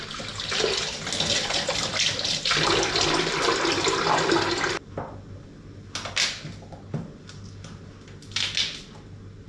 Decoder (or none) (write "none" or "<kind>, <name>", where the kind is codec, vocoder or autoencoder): none